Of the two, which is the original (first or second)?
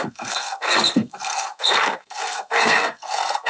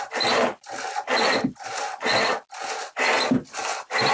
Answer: second